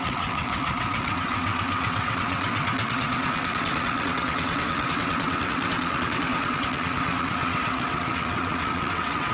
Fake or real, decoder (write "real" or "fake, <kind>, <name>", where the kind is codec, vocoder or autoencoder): fake, vocoder, WaveNeXt